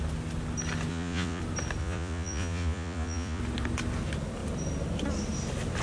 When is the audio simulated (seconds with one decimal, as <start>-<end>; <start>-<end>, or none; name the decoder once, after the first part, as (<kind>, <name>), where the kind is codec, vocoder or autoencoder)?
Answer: 0.9-1.4 (vocoder, Vocos); 1.8-3.4